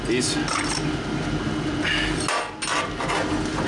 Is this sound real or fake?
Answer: real